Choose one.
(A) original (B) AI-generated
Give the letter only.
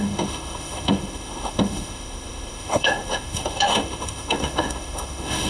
B